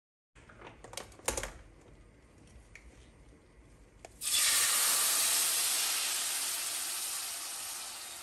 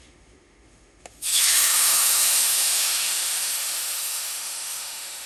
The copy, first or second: second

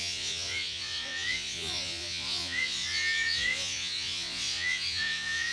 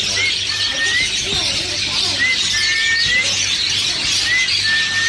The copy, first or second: first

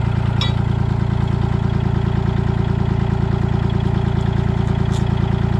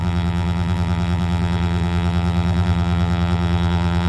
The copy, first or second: second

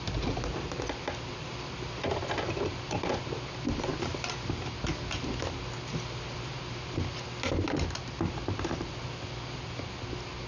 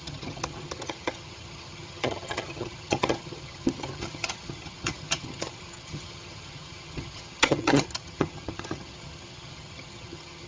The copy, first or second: second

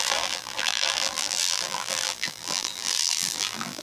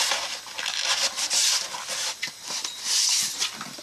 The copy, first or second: first